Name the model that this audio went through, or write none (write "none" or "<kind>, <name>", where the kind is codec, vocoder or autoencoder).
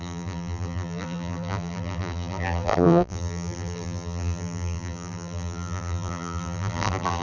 vocoder, BigVGAN v2